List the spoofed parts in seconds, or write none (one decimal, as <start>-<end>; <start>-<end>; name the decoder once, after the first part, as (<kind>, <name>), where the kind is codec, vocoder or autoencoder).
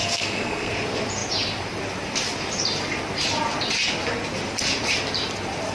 0.0-0.7 (codec, SNAC)